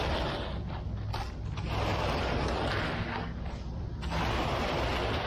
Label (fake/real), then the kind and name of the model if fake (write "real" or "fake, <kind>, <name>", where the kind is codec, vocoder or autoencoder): real